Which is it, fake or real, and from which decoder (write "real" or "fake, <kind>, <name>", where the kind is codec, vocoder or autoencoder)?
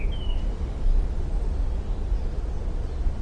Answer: real